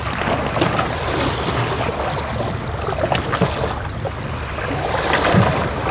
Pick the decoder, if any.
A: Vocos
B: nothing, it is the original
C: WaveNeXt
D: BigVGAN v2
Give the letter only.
B